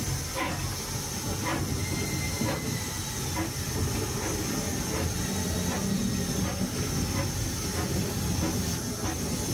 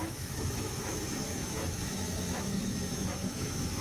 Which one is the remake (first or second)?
second